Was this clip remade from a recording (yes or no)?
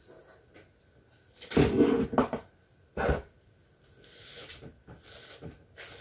no